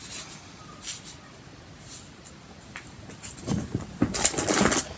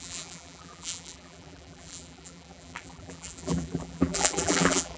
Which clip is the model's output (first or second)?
second